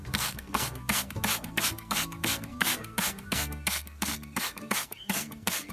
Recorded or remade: remade